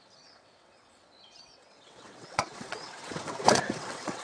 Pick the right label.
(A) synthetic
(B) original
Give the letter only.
A